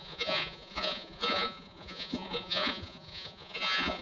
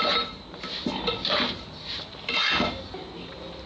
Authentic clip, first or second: second